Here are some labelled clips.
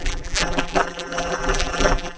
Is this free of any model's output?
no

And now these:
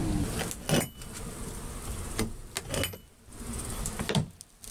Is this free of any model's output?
yes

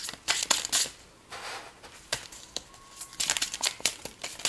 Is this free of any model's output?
no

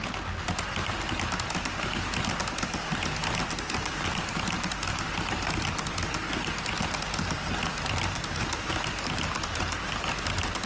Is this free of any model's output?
yes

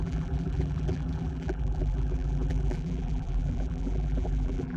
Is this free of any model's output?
no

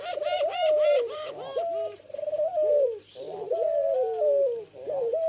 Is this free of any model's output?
no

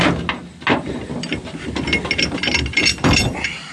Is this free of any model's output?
yes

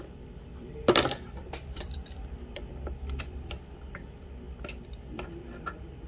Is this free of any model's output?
no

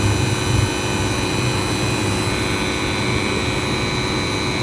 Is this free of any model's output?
yes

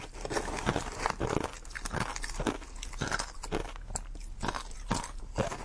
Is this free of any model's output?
yes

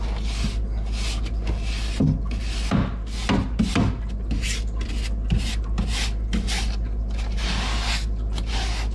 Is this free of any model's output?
yes